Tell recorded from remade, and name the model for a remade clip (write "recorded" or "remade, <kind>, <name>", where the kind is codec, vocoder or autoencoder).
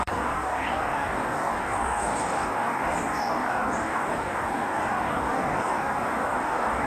remade, codec, DAC